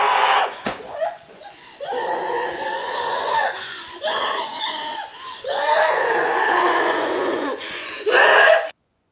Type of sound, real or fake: fake